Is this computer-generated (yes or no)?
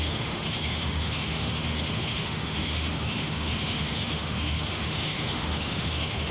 yes